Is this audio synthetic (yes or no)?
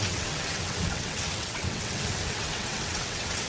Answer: yes